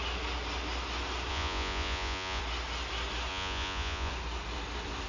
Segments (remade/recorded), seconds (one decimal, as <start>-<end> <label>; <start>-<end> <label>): 0.0-1.3 recorded; 1.3-2.4 remade; 2.4-3.3 recorded; 3.3-4.1 remade; 4.1-5.1 recorded